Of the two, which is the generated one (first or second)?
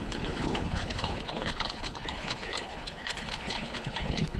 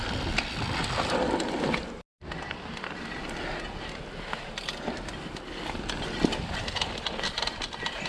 first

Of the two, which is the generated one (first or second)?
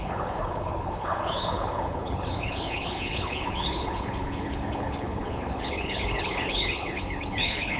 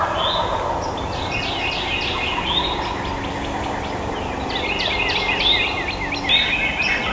first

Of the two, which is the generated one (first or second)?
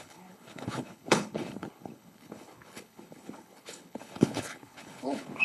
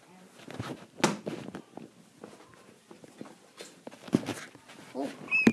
first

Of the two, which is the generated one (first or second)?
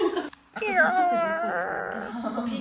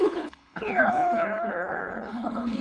second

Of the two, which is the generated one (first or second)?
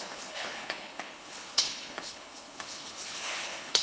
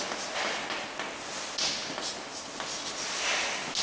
first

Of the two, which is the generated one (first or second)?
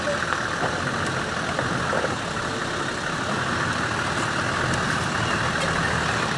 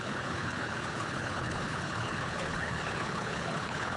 second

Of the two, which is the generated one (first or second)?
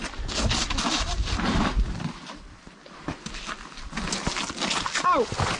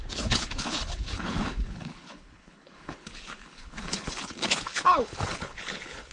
second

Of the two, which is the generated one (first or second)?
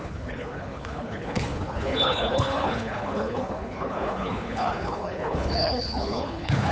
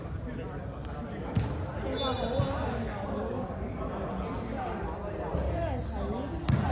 first